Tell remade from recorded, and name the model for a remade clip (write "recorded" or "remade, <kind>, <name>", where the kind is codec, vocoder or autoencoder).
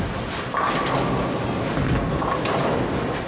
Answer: recorded